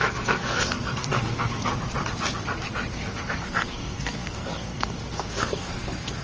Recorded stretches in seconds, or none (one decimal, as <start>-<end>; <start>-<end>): 1.7-2.9